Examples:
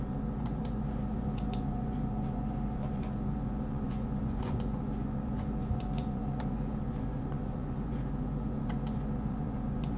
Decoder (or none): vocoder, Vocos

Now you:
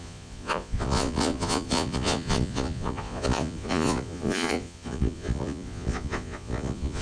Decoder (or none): vocoder, Vocos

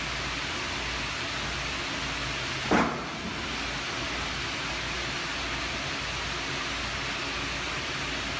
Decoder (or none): none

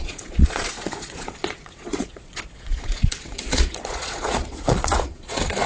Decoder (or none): vocoder, Vocos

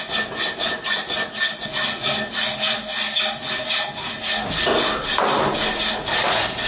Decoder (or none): none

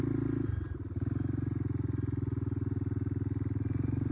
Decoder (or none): none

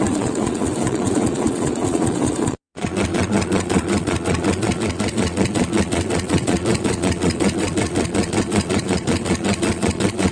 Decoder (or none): vocoder, Vocos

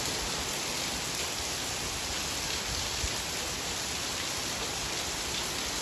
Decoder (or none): none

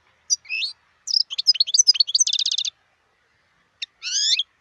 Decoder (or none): none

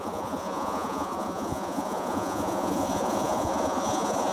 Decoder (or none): vocoder, Vocos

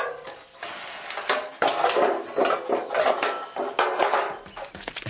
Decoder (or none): none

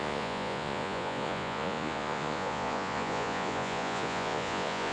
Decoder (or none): vocoder, Vocos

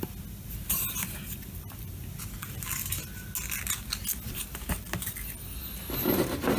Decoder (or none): none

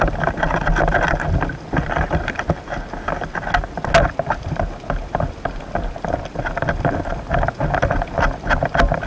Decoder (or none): none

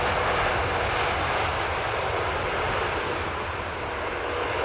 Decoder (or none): none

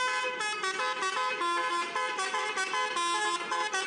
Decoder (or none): none